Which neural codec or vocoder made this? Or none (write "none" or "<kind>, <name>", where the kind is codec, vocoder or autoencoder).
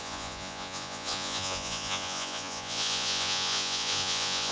vocoder, Vocos